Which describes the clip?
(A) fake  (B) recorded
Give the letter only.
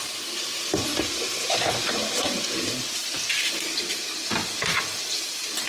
A